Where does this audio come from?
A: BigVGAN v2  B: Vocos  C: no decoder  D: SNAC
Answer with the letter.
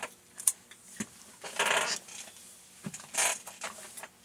A